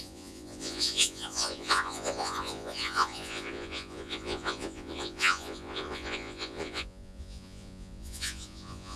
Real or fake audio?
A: fake